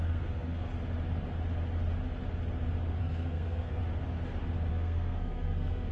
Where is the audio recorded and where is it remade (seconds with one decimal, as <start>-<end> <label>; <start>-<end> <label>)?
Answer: 0.0-0.7 remade; 0.7-3.0 recorded; 3.0-3.8 remade; 3.8-4.7 recorded; 4.7-5.9 remade